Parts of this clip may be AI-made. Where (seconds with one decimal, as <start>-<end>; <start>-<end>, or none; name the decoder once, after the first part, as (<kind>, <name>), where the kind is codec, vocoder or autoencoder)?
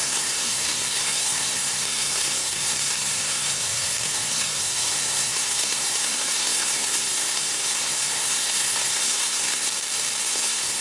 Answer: 0.0-9.7 (codec, SNAC); 10.2-10.8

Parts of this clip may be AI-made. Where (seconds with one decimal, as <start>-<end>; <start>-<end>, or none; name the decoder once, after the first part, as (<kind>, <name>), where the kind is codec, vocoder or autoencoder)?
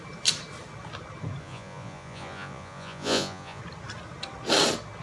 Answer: 1.4-3.6 (vocoder, Vocos)